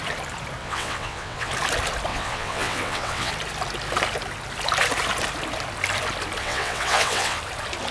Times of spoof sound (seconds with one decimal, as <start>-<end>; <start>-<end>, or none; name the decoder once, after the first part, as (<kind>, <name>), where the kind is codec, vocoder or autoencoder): 0.6-1.5 (vocoder, WaveNeXt); 2.1-3.3; 6.4-7.4